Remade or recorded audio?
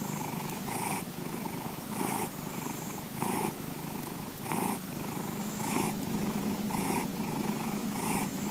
remade